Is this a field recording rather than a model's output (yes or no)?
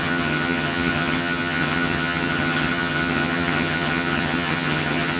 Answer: no